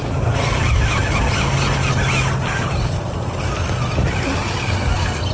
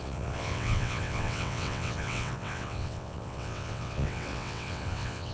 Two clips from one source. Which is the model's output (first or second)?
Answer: second